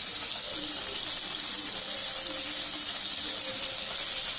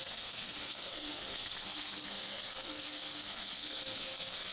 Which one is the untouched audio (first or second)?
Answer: first